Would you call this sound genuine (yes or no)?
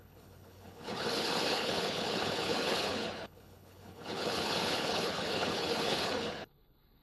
no